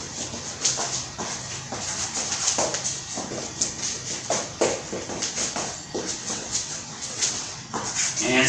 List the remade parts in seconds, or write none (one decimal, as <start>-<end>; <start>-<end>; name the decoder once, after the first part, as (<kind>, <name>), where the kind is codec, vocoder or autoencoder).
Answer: 6.2-8.1 (vocoder, WaveNeXt)